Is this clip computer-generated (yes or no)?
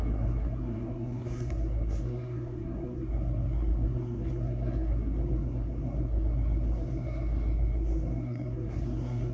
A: yes